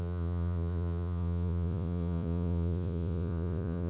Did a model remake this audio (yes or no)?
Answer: yes